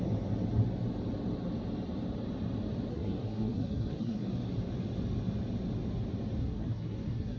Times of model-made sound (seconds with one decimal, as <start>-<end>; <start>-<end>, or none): 2.9-4.3; 6.4-7.4